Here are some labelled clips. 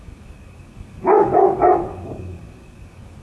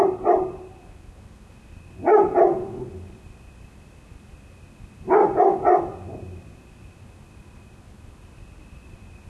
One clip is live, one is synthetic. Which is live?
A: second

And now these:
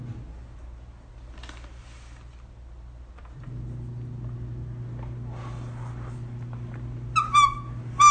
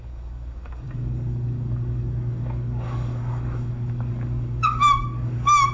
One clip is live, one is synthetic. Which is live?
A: first